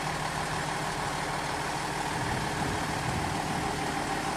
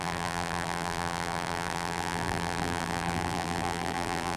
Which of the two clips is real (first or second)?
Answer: first